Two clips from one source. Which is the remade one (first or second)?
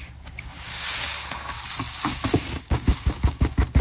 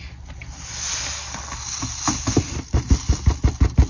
first